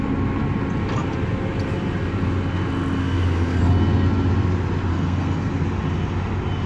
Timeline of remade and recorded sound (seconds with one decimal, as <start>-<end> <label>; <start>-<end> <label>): 0.0-3.0 recorded; 3.0-3.6 remade; 3.6-4.9 recorded; 4.9-5.5 remade; 5.5-6.7 recorded

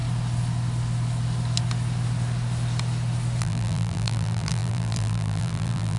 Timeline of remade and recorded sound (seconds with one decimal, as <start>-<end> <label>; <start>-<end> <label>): 0.0-3.4 recorded; 3.4-6.0 remade

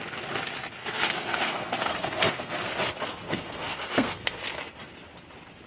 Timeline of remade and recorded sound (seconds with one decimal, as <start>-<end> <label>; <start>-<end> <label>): 0.0-0.8 recorded; 0.8-2.6 remade; 2.6-3.1 recorded; 3.1-4.4 remade; 4.4-5.7 recorded

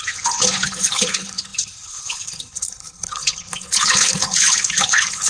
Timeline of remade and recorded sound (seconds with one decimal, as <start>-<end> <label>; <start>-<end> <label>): 0.0-5.3 remade

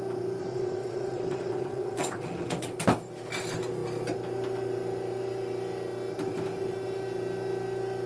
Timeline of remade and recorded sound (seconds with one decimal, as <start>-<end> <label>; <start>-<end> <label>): 0.0-0.4 recorded; 0.4-2.7 remade; 2.7-8.1 recorded